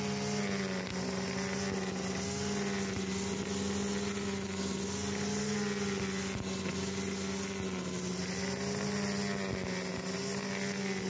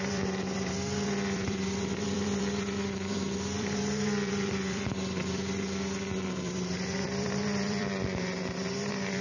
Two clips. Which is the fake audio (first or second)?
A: second